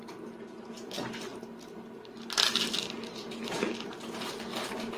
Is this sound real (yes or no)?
yes